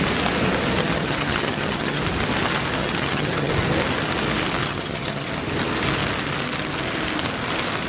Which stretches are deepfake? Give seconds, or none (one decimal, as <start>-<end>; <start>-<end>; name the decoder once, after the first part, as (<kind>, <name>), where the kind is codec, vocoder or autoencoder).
0.8-2.0 (vocoder, HiFi-GAN); 2.8-3.5; 4.6-5.3